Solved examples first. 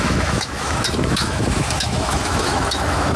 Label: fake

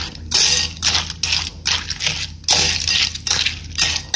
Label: real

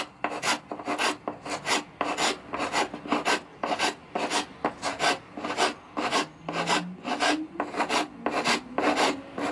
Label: real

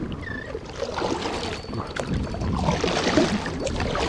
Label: real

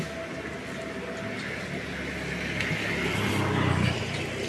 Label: real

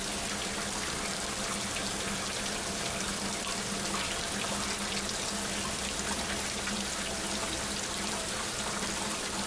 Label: real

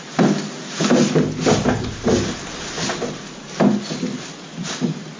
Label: real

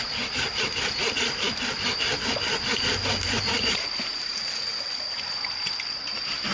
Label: real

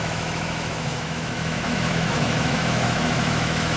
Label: fake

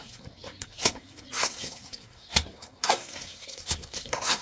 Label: fake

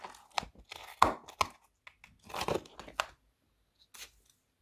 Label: real